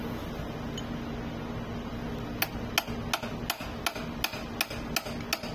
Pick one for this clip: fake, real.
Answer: real